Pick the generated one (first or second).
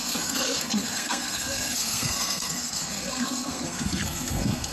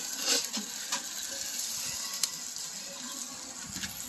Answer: first